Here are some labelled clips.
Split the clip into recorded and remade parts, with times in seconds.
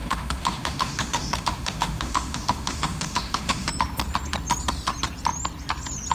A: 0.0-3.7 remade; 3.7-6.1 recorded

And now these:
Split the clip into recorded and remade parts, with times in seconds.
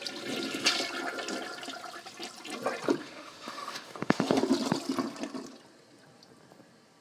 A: 0.0-3.0 recorded; 3.0-4.4 remade; 4.4-7.0 recorded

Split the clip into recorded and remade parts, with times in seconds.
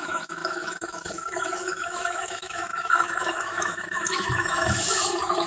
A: 0.0-5.5 remade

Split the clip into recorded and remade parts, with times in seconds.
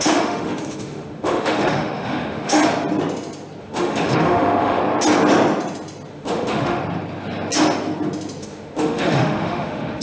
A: 0.0-2.6 remade; 2.6-3.6 recorded; 3.6-4.8 remade; 4.8-6.1 recorded; 6.1-6.8 remade; 6.8-8.4 recorded; 8.4-10.0 remade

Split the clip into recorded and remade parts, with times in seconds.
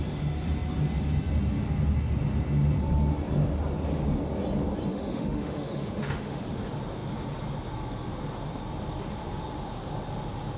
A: 0.0-4.9 recorded; 4.9-6.4 remade; 6.4-10.6 recorded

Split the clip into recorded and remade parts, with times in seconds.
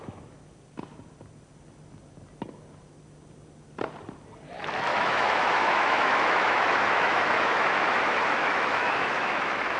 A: 0.0-4.9 recorded; 4.9-9.8 remade